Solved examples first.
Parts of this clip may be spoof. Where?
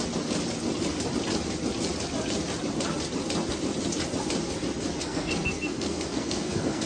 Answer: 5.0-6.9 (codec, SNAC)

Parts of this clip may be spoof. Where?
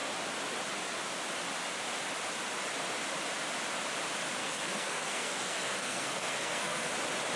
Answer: 4.4-6.9 (codec, SNAC)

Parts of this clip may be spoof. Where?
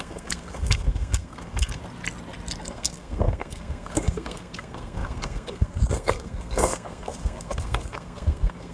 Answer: 0.0-1.8 (codec, SNAC); 2.6-8.7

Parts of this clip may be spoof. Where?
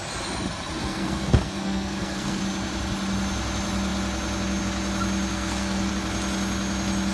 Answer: 0.8-2.4 (codec, SNAC); 5.3-5.9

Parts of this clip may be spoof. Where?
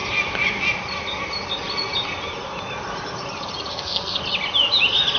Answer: 3.7-4.2 (codec, SNAC)